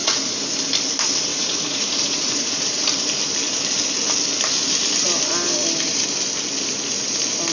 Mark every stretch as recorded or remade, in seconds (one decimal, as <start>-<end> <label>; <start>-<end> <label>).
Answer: 0.0-0.5 remade; 0.5-1.3 recorded; 1.3-2.8 remade; 2.8-7.5 recorded